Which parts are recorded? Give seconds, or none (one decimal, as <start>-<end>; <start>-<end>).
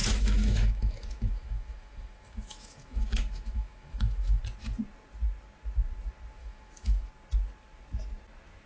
4.4-6.4; 7.1-8.7